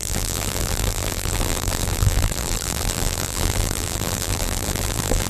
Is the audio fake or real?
fake